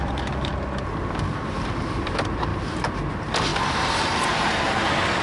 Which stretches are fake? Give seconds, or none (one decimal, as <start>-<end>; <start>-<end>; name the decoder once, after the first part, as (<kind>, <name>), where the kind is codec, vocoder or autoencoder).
0.0-0.5 (vocoder, BigVGAN v2); 1.8-2.5; 3.1-5.2